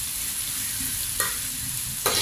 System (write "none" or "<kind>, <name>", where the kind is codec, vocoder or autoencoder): none